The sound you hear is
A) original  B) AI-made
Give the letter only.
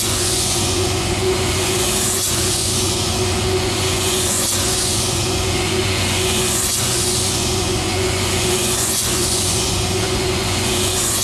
B